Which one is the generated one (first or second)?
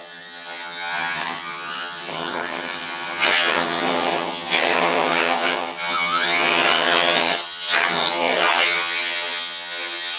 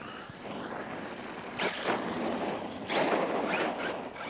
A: first